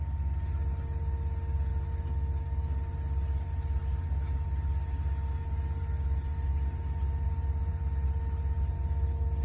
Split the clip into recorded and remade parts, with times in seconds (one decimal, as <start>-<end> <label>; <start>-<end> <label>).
0.0-9.4 recorded